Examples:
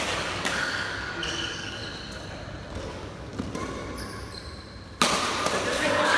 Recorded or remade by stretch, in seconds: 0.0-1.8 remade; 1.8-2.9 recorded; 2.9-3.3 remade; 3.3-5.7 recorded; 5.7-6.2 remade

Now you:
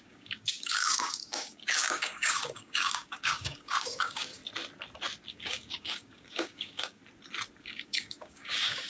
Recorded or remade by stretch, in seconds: 0.0-4.4 remade; 4.4-5.3 recorded; 5.3-7.0 remade; 7.0-7.6 recorded; 7.6-8.9 remade

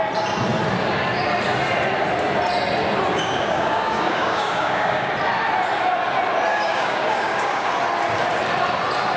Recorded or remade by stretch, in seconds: 0.0-3.1 recorded; 3.1-5.1 remade; 5.1-6.5 recorded; 6.5-7.7 remade; 7.7-9.2 recorded

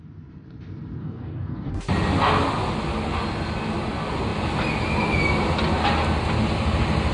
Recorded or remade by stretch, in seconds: 0.0-1.0 recorded; 1.0-1.7 remade; 1.7-7.1 recorded